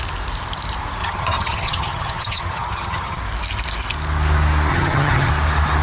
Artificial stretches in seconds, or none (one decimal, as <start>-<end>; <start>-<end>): 1.0-3.2; 4.7-5.3